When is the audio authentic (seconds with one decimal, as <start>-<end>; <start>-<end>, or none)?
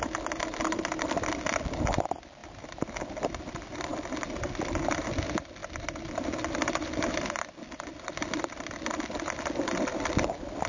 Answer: 0.0-10.7